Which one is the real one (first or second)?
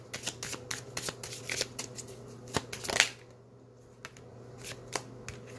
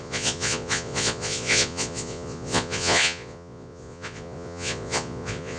first